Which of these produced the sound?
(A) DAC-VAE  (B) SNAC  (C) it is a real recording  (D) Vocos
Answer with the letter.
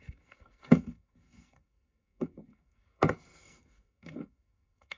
B